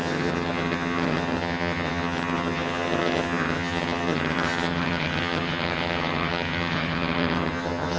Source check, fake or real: fake